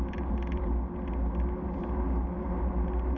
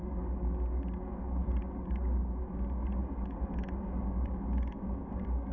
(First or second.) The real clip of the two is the first